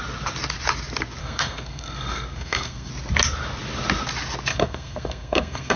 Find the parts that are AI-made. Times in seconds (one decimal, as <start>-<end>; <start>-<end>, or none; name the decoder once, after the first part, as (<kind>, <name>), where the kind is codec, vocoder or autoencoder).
1.2-2.9 (codec, SNAC); 4.5-5.8